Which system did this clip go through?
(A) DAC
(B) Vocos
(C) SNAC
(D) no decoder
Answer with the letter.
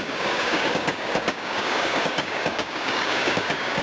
A